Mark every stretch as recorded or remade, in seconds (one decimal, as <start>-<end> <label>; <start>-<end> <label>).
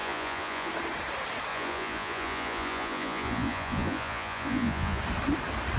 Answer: 0.0-0.7 remade; 0.7-1.5 recorded; 1.5-5.0 remade; 5.0-5.8 recorded